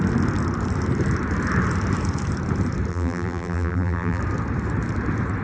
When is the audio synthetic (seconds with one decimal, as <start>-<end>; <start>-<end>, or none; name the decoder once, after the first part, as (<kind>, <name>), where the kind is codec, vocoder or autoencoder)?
2.9-4.2 (vocoder, BigVGAN v2)

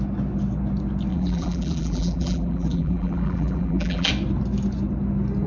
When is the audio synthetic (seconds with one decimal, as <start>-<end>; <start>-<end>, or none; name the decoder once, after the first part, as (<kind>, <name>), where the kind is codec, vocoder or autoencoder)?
1.1-4.1 (vocoder, BigVGAN v2)

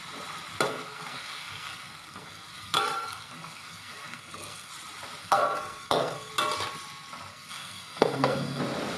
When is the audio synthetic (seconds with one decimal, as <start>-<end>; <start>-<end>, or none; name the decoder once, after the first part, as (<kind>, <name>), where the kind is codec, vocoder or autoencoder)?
0.7-4.7 (codec, SNAC); 5.2-6.3; 7.3-8.6

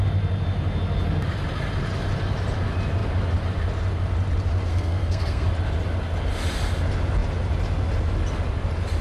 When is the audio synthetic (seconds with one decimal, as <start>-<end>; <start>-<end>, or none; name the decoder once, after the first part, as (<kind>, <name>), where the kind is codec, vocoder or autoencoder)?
4.7-5.5 (codec, SNAC)

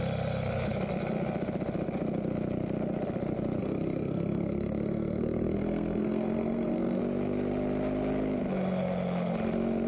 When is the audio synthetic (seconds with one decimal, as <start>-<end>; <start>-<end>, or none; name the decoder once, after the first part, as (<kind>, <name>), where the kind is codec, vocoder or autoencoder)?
3.6-7.0 (codec, SNAC)

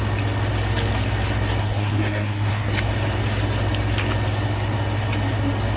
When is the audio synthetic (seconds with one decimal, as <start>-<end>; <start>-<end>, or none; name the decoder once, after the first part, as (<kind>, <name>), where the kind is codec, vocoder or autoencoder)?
1.6-2.7 (codec, SNAC)

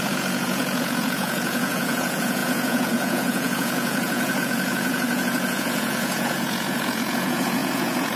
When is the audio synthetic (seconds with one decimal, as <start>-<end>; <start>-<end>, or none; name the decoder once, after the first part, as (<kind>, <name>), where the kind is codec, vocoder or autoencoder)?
0.0-8.2 (vocoder, Vocos)

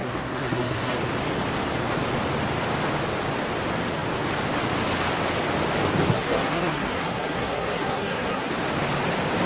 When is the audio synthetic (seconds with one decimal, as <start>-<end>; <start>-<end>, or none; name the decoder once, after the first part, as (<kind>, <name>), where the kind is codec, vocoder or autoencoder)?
0.0-1.0 (codec, SNAC); 6.1-8.5